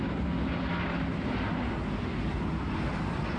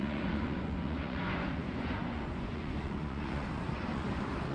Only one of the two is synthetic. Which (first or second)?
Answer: second